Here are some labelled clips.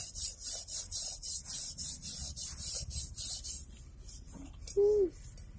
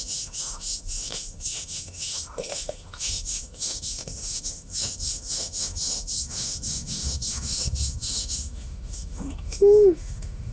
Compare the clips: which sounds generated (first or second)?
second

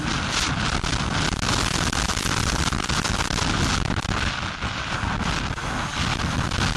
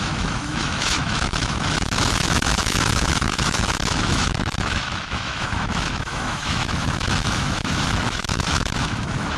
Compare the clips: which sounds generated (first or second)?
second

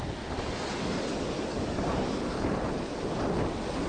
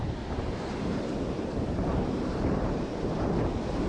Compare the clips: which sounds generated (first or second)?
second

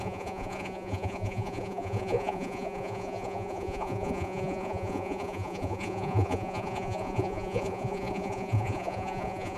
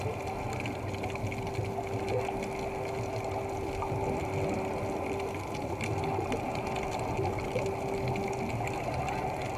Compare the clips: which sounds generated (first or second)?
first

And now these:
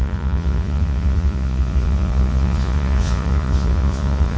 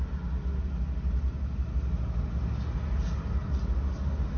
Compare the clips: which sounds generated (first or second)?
first